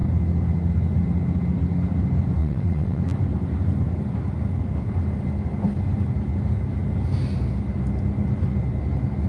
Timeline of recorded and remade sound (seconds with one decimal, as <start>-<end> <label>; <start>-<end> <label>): 0.0-2.4 recorded; 2.4-3.0 remade; 3.0-9.3 recorded